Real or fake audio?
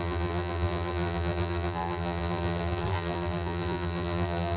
fake